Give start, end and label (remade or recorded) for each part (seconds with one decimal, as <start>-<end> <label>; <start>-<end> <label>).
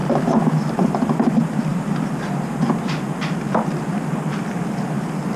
0.0-5.4 recorded